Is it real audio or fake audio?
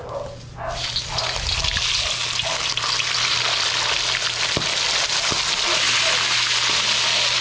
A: real